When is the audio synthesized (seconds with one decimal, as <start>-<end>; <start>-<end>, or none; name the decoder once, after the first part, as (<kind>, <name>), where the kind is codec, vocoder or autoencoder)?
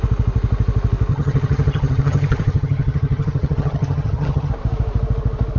1.1-4.5 (vocoder, HiFi-GAN)